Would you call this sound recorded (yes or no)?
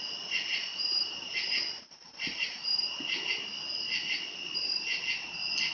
yes